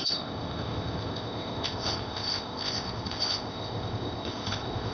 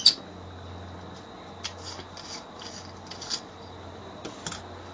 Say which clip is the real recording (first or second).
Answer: second